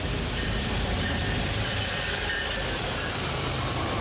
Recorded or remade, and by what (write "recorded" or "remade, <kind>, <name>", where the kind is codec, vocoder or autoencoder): remade, vocoder, BigVGAN v2